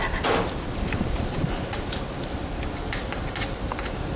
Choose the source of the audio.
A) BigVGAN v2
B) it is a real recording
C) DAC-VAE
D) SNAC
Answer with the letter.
B